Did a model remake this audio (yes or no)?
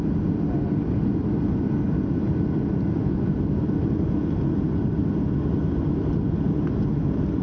no